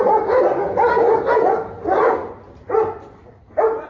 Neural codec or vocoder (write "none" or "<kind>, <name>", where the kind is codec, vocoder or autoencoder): none